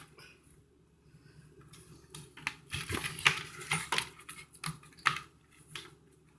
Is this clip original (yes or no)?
yes